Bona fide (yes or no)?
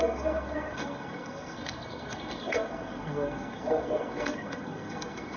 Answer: no